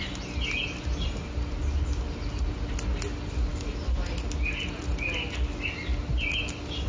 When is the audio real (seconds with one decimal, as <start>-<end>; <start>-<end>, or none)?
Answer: 0.0-6.9